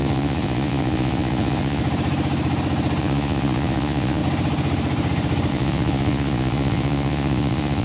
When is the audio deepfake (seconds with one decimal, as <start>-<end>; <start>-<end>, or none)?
0.0-1.8; 3.0-4.2; 5.5-7.8